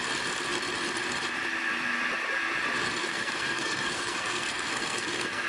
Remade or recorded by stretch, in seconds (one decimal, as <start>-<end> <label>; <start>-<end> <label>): 0.0-3.0 recorded; 3.0-5.5 remade